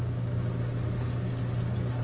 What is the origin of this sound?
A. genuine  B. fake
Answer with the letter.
A